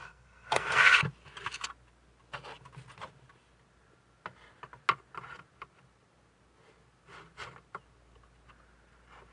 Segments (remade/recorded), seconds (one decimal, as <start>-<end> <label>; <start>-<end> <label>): 0.0-1.0 remade; 1.0-9.3 recorded